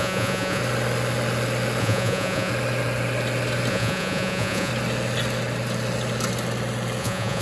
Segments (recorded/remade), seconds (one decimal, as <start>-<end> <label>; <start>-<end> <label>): 0.0-0.6 remade; 0.6-1.8 recorded; 1.8-2.5 remade; 2.5-3.7 recorded; 3.7-4.7 remade; 4.7-7.0 recorded; 7.0-7.4 remade